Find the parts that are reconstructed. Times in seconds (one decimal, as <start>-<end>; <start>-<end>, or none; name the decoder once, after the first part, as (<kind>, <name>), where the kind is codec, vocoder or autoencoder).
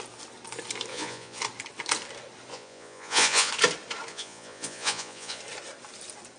0.9-1.4 (vocoder, Vocos); 2.5-3.5; 4.1-5.4